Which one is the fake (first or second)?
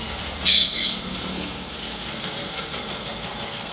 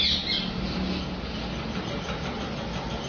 first